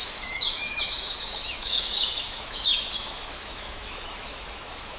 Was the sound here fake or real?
fake